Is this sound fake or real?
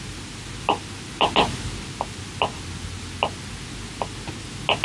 real